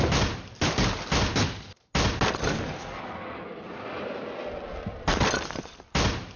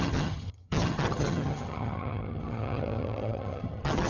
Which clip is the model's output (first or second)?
second